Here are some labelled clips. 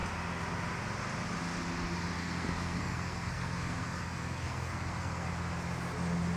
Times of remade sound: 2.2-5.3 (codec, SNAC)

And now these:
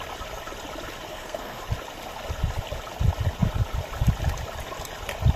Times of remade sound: 1.1-1.6 (codec, SNAC)

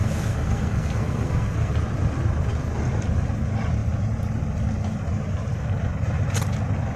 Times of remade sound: 0.0-1.7 (codec, SNAC)